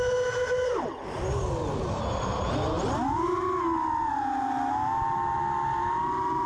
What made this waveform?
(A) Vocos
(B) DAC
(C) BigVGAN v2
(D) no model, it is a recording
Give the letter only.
D